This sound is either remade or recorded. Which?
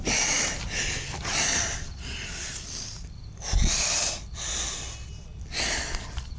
recorded